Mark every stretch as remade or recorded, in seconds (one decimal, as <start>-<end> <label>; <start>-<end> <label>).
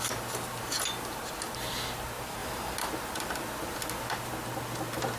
0.0-5.2 recorded